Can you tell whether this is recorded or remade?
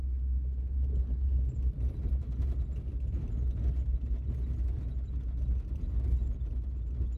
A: recorded